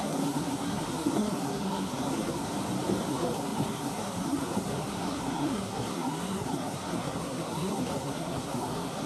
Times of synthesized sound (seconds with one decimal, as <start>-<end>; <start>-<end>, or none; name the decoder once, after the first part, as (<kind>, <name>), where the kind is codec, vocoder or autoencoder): 0.0-2.5 (codec, SNAC); 3.1-9.1